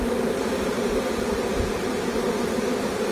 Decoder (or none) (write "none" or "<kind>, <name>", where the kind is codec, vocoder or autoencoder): vocoder, BigVGAN v2